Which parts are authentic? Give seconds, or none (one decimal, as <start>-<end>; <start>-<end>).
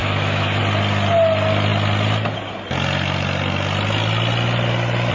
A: 0.6-5.1